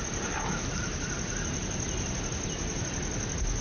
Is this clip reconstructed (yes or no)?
no